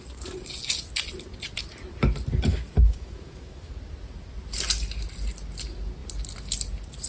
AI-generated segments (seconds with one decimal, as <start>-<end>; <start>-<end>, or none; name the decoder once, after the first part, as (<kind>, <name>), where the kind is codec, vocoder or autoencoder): 2.5-3.7 (autoencoder, DAC-VAE)